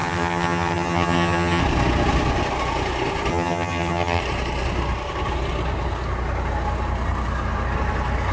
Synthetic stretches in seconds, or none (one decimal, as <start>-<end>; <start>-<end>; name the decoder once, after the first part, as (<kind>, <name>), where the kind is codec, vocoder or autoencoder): 0.0-1.6 (vocoder, HiFi-GAN); 3.3-4.2